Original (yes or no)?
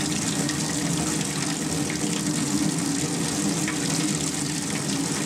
yes